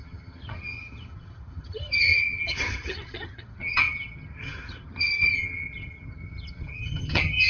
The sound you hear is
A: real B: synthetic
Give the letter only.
B